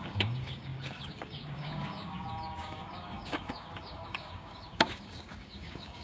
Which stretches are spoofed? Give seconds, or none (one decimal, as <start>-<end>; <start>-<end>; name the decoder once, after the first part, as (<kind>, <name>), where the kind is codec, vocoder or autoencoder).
0.0-6.0 (codec, DAC)